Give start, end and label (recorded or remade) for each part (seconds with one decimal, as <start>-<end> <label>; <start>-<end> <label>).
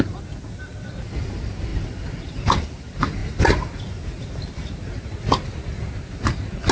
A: 0.0-6.7 recorded